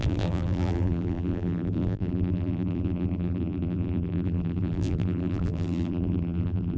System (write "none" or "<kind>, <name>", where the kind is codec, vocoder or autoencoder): vocoder, BigVGAN v2